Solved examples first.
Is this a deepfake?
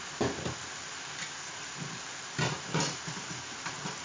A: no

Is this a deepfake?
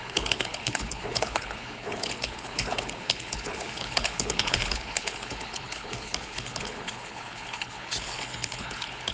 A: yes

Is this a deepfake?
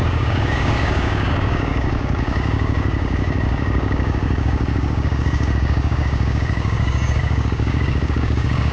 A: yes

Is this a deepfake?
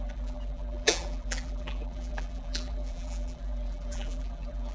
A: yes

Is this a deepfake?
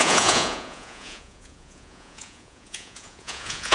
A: yes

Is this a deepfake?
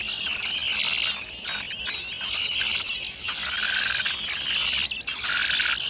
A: no